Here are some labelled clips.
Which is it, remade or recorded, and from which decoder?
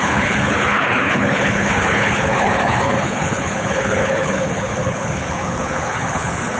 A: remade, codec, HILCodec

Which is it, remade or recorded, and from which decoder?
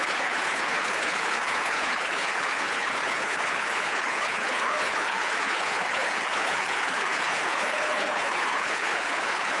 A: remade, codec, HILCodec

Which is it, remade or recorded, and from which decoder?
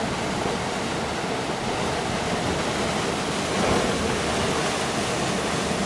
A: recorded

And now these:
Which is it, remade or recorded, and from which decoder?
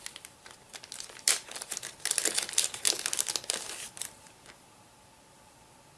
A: recorded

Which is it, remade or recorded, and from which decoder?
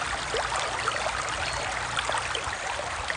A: recorded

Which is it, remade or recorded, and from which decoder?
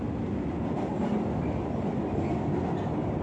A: recorded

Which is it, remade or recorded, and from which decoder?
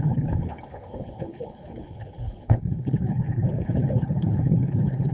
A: remade, codec, HILCodec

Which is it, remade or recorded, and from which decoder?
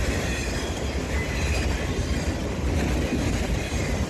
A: recorded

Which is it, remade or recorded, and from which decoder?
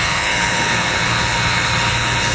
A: remade, codec, HILCodec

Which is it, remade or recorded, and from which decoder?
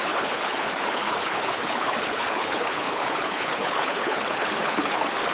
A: remade, codec, HILCodec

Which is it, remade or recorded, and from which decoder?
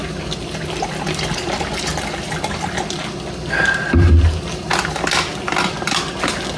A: recorded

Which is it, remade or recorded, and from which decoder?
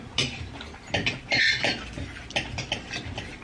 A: recorded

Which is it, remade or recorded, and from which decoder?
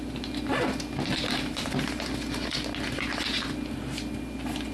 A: recorded